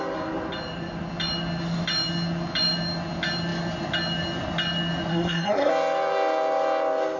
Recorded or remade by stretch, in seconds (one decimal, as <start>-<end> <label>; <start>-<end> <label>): 0.0-5.1 recorded; 5.1-5.7 remade; 5.7-7.2 recorded